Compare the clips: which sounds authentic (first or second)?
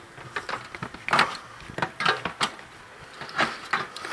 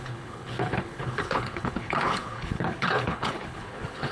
first